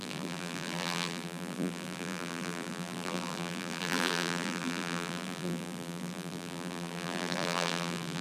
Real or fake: fake